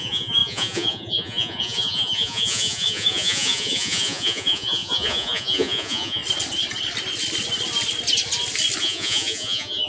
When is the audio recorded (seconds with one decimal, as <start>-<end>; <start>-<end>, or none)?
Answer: 6.2-8.8